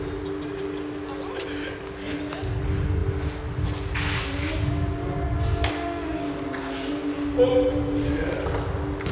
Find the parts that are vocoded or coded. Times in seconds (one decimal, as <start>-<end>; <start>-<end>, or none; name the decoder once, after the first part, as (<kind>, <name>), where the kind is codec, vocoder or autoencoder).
none